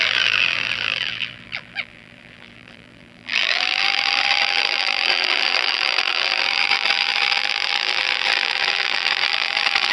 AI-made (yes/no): yes